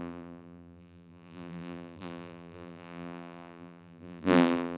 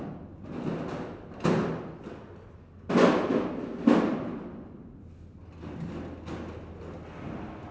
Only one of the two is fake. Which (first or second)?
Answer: first